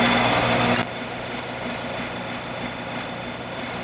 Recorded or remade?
recorded